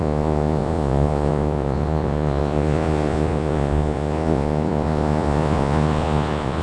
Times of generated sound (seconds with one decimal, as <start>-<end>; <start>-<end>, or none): 0.0-6.6